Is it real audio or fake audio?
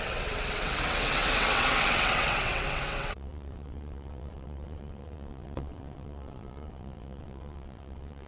fake